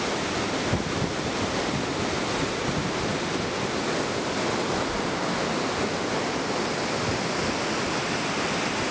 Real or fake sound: real